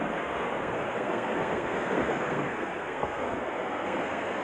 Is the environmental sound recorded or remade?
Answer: remade